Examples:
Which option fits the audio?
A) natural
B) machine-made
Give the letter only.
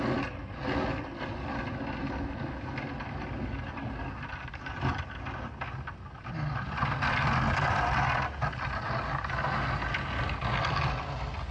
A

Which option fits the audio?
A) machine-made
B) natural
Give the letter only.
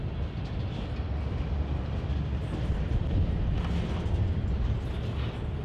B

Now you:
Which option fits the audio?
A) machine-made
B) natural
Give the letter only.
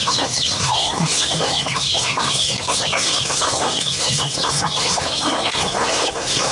A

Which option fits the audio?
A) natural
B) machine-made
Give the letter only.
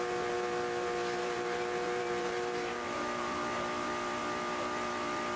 B